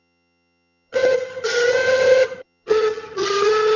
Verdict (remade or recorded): remade